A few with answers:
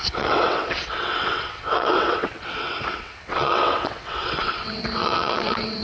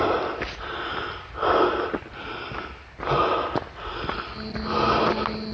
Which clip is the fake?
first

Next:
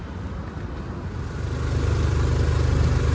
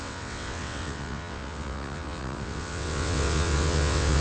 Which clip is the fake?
second